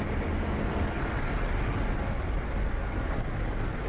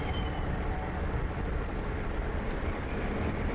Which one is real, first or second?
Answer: first